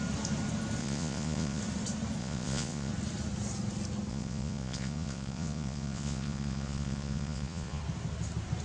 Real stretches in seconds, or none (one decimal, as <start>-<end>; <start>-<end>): 0.0-0.8; 1.6-2.2; 2.9-4.1; 7.8-8.6